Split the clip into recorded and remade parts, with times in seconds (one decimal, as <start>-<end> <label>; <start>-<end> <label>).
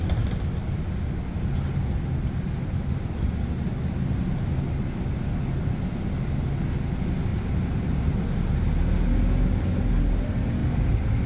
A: 0.0-7.3 recorded; 7.3-8.4 remade; 8.4-10.6 recorded; 10.6-11.3 remade